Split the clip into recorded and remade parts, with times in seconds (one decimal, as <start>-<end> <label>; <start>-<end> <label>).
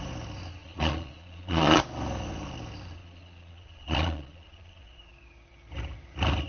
0.0-0.6 recorded; 0.6-1.8 remade; 1.8-3.0 recorded; 3.0-5.1 remade; 5.1-6.5 recorded